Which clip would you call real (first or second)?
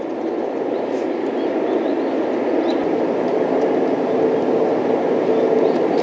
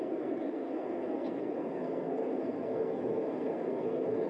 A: first